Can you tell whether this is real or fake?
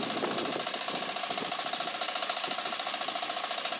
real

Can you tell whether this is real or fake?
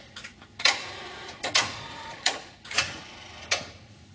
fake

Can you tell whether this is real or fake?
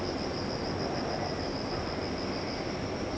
real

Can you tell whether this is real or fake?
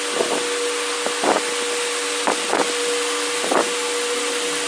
real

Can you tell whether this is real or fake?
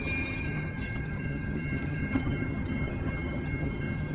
fake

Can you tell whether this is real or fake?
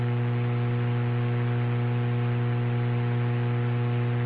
real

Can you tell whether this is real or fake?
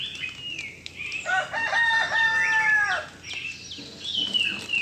real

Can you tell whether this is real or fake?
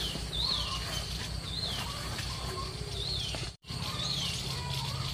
fake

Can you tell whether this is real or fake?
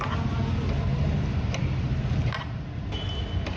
real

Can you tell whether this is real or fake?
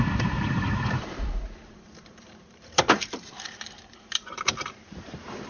fake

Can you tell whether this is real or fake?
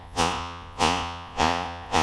fake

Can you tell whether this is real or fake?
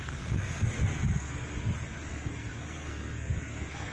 fake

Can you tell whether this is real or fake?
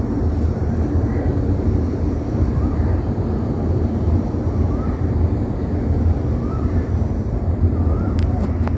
fake